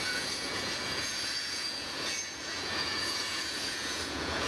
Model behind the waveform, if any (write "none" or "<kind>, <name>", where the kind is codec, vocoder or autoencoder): vocoder, Vocos